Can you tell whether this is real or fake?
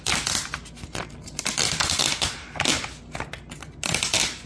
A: real